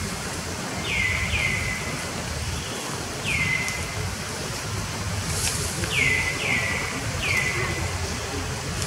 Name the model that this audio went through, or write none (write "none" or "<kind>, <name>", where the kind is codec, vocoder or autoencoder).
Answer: none